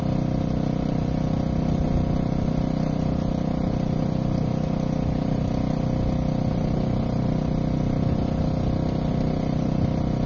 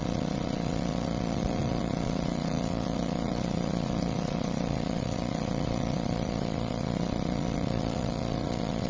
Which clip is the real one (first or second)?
first